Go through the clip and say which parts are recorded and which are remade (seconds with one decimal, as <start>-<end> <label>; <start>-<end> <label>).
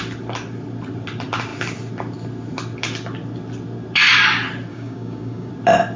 0.0-4.7 recorded; 4.7-5.5 remade; 5.5-6.0 recorded